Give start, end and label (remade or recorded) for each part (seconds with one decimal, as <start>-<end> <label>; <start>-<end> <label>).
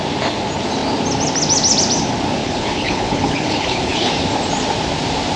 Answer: 0.0-2.4 recorded; 2.4-4.1 remade; 4.1-5.4 recorded